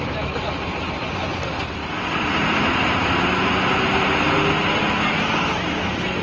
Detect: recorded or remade recorded